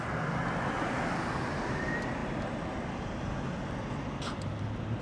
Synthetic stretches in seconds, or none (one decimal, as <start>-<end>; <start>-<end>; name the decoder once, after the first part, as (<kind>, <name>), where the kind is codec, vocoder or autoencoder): none